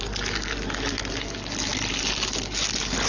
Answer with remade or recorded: recorded